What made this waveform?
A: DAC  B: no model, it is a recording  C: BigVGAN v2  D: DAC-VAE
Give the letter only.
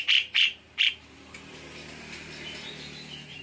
C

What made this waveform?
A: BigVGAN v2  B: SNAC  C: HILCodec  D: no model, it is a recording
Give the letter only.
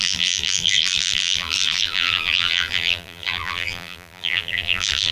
A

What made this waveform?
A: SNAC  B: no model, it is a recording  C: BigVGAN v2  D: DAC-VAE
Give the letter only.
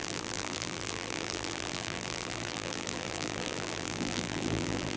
C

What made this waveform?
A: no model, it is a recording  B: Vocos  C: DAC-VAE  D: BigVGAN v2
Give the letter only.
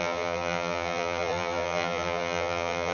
D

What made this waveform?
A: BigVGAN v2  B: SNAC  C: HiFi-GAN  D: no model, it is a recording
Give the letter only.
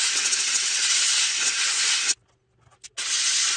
D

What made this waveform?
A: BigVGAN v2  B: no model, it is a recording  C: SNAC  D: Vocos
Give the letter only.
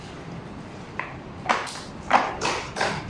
A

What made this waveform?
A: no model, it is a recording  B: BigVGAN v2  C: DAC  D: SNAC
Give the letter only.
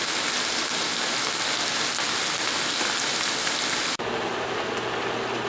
A